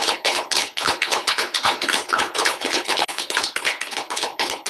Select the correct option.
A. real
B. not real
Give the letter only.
B